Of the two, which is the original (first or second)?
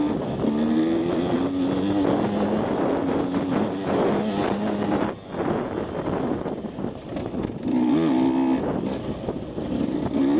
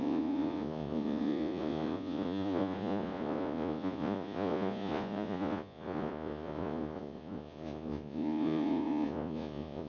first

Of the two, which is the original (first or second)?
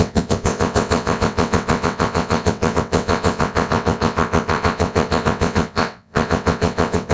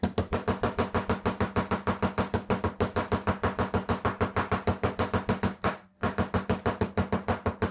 second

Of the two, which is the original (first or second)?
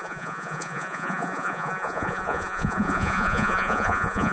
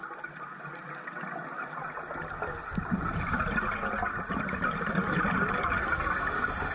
second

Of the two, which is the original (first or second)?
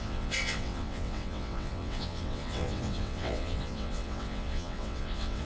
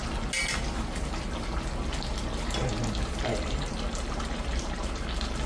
second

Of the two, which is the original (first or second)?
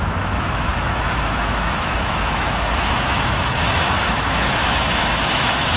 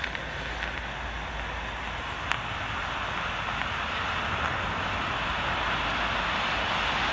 second